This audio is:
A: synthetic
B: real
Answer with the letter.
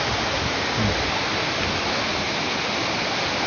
B